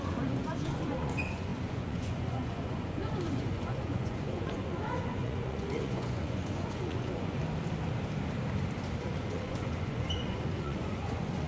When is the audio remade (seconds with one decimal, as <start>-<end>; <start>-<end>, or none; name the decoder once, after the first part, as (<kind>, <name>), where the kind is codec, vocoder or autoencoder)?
0.0-7.4 (vocoder, Vocos); 9.0-11.5